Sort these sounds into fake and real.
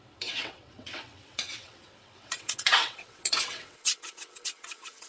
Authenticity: fake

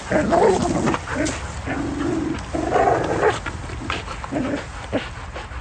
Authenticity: real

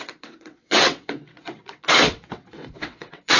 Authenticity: fake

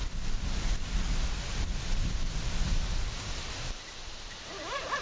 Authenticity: real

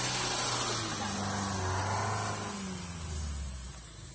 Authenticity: real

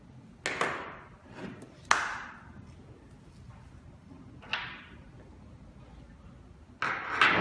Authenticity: real